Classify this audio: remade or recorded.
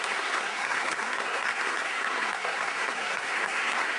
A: remade